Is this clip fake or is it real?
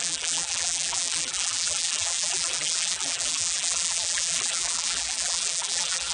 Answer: fake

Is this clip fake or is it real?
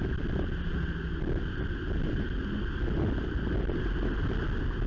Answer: real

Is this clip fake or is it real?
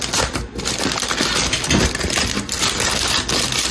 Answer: real